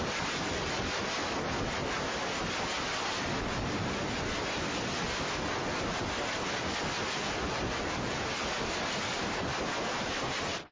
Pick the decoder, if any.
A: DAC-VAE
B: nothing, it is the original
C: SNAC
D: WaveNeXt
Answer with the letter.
B